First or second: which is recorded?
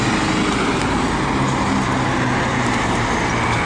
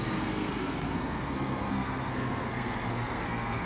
first